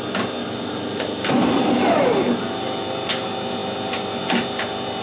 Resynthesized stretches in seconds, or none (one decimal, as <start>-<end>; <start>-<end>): 0.4-2.2